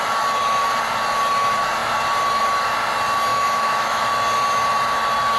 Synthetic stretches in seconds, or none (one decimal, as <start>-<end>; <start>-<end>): 3.3-4.0